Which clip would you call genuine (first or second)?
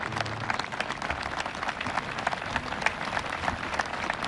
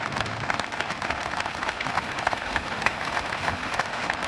first